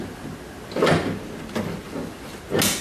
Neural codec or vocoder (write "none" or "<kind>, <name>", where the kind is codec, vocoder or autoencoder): none